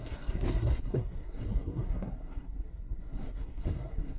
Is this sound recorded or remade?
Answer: remade